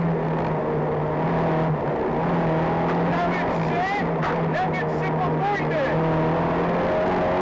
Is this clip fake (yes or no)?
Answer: no